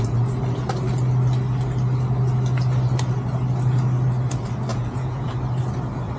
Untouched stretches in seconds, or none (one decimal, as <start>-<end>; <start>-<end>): 0.0-4.7; 5.3-6.2